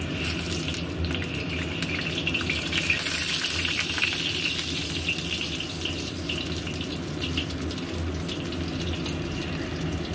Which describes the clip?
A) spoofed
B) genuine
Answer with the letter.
B